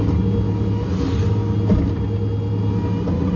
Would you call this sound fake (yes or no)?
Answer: no